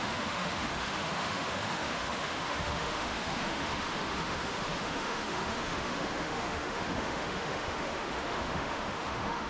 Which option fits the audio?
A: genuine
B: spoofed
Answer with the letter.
B